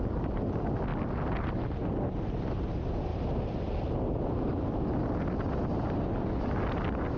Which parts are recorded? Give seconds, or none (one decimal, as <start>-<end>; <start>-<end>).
0.0-7.2